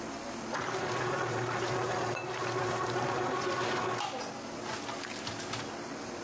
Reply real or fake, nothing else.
real